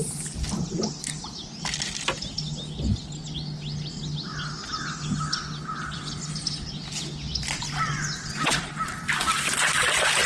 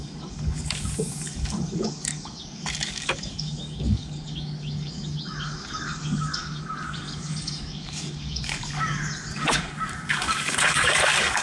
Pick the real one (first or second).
first